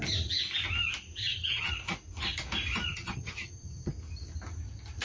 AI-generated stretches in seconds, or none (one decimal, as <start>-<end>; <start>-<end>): 1.2-1.7; 2.9-3.9